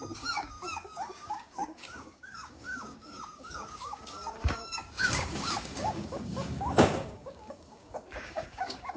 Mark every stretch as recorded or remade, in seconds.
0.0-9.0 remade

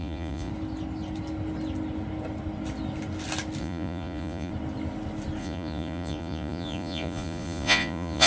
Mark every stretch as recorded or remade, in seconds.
0.0-0.5 remade; 0.5-3.6 recorded; 3.6-4.5 remade; 4.5-5.4 recorded; 5.4-8.3 remade

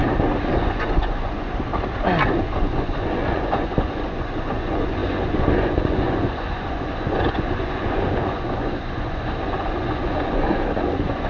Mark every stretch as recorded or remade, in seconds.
0.0-0.6 recorded; 0.6-1.7 remade; 1.7-2.3 recorded; 2.3-11.3 remade

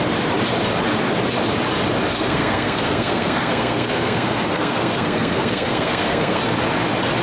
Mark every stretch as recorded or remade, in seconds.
0.0-2.1 recorded; 2.1-6.4 remade; 6.4-7.2 recorded